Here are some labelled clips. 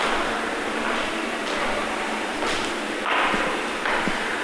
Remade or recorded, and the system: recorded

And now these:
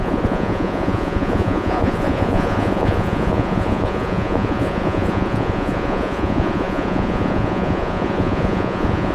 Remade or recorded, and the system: remade, vocoder, Vocos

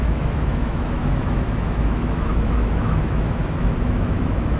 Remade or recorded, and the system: remade, autoencoder, DAC-VAE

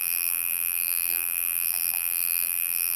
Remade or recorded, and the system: remade, vocoder, BigVGAN v2